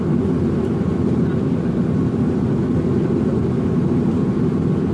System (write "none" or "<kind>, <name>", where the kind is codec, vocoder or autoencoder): none